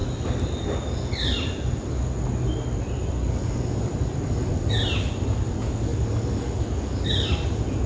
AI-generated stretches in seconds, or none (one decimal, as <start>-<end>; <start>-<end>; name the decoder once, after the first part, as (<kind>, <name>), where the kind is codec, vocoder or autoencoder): none